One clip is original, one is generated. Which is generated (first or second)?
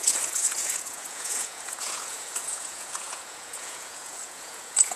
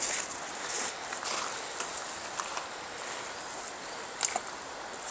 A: first